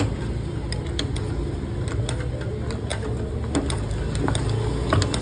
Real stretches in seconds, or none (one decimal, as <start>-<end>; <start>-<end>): 0.0-5.2